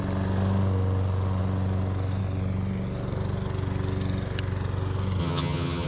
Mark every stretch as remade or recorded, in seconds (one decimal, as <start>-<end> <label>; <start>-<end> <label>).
0.0-5.2 recorded; 5.2-5.9 remade